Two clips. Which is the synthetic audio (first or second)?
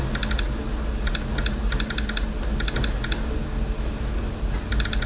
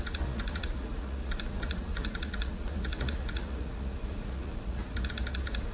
second